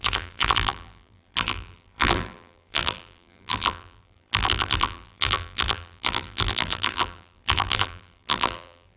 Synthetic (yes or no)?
yes